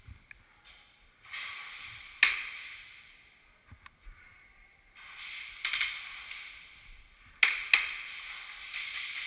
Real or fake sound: real